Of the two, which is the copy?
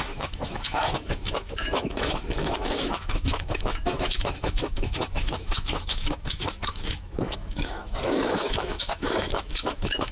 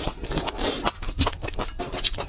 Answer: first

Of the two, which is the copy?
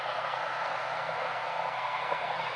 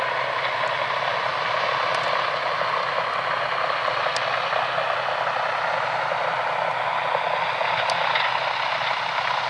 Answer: first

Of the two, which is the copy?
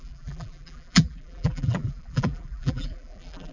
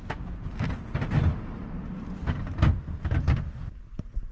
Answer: first